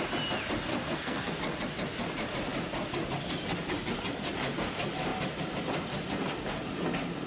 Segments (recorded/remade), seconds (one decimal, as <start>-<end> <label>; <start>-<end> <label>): 0.0-0.7 recorded; 0.7-1.3 remade; 1.3-7.3 recorded